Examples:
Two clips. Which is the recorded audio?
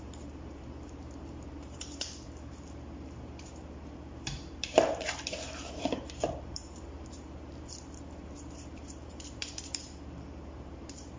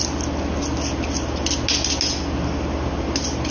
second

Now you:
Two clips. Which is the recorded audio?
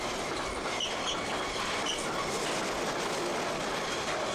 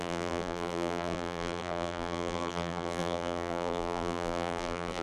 first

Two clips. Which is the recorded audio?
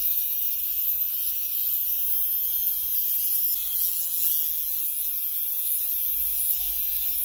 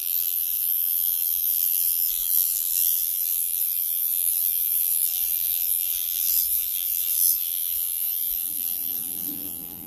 first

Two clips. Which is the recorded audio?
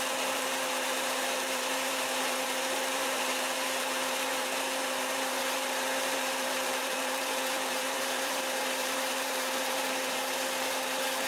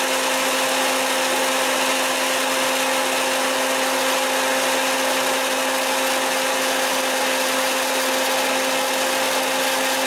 second